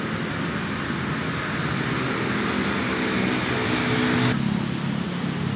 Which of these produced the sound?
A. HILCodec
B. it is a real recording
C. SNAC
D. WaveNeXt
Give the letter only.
B